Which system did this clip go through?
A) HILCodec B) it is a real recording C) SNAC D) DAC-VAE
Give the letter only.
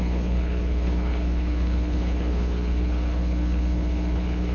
A